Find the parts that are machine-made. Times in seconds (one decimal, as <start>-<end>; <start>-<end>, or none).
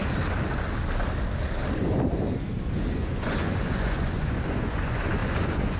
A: 2.9-5.8